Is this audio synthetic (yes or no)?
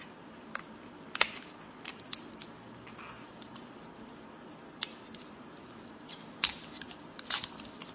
no